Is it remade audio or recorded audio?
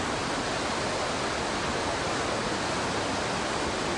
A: recorded